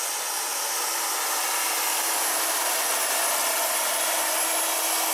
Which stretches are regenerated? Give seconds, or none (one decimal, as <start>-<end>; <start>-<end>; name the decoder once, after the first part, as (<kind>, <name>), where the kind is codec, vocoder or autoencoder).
none